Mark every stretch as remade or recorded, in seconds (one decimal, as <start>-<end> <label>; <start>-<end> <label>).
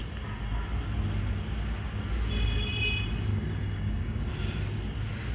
0.0-3.3 recorded; 3.3-4.3 remade; 4.3-5.3 recorded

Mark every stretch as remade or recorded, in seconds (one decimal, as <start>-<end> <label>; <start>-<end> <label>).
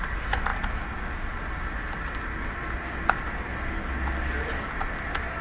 0.0-5.4 recorded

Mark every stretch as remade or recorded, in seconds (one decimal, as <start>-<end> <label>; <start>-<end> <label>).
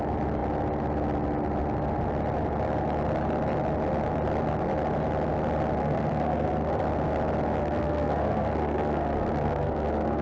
0.0-5.8 recorded; 5.8-6.8 remade; 6.8-7.6 recorded; 7.6-10.2 remade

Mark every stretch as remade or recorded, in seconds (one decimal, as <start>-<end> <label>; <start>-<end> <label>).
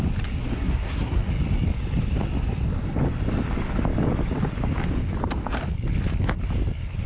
0.0-0.4 recorded; 0.4-1.3 remade; 1.3-7.1 recorded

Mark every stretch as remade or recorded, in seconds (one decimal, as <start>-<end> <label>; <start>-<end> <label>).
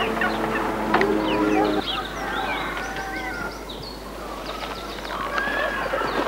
0.0-2.5 recorded; 2.5-4.4 remade; 4.4-6.3 recorded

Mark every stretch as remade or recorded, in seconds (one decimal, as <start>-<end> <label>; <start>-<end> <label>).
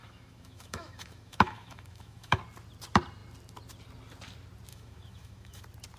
0.0-2.4 remade; 2.4-4.7 recorded; 4.7-5.6 remade; 5.6-6.0 recorded